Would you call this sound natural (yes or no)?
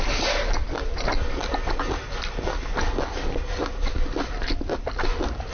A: yes